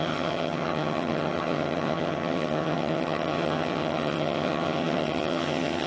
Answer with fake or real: fake